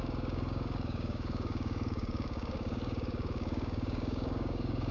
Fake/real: fake